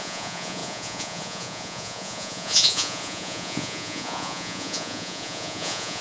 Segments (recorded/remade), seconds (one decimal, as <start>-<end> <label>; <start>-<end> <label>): 0.0-6.0 remade